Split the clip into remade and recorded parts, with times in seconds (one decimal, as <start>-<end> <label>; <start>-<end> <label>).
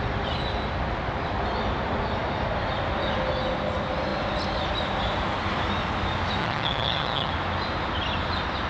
0.0-6.4 recorded; 6.4-7.3 remade; 7.3-8.7 recorded